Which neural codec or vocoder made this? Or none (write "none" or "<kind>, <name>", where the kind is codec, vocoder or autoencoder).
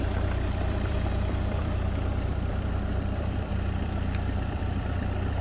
vocoder, BigVGAN v2